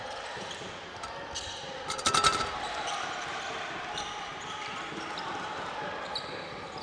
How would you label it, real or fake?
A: fake